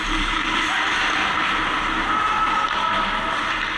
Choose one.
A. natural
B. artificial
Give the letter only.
A